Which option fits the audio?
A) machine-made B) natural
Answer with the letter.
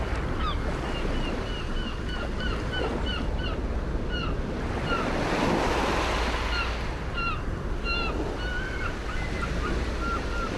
B